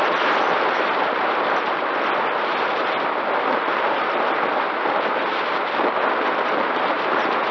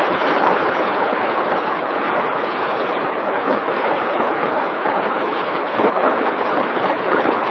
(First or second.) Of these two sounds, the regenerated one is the second